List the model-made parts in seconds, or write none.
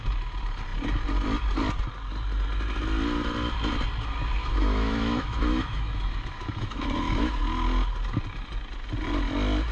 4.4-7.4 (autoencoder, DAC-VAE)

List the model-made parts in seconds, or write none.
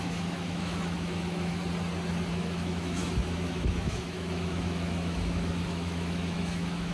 0.0-1.6 (autoencoder, DAC-VAE); 2.3-6.9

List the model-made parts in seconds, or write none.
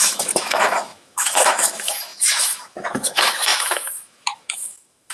0.0-5.1 (autoencoder, DAC-VAE)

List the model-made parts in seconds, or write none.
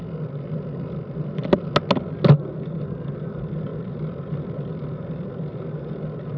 none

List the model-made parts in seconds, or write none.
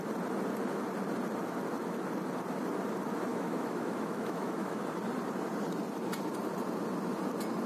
3.3-4.8 (autoencoder, DAC-VAE)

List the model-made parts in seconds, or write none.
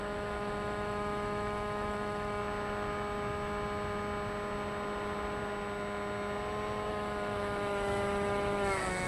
0.0-2.4 (autoencoder, DAC-VAE); 6.9-9.1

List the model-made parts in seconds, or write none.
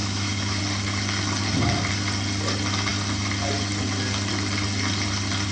0.0-0.6 (autoencoder, DAC-VAE)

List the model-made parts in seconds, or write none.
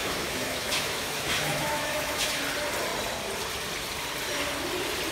0.0-2.4 (autoencoder, DAC-VAE)